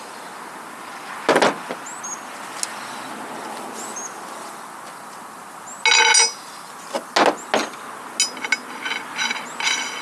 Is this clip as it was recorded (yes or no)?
yes